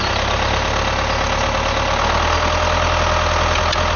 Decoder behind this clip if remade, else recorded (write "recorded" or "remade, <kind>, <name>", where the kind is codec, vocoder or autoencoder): recorded